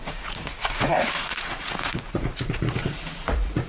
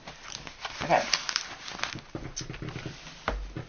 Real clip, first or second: second